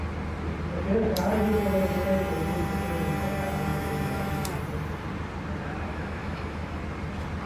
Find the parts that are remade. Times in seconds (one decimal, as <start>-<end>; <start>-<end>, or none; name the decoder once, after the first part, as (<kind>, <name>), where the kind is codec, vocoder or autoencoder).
3.7-4.4 (autoencoder, DAC-VAE); 5.9-6.8